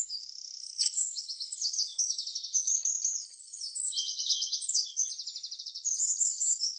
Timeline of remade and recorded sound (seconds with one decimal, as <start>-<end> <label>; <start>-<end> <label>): 0.0-5.1 remade; 5.1-5.6 recorded; 5.6-6.8 remade